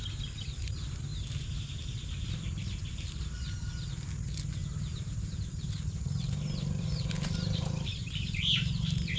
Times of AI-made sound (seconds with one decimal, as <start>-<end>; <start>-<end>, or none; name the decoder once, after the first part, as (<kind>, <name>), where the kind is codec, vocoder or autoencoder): 1.1-2.7 (vocoder, BigVGAN v2); 4.6-9.2